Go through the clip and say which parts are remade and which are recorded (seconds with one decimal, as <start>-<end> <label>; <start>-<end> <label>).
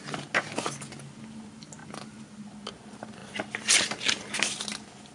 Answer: 0.0-5.1 recorded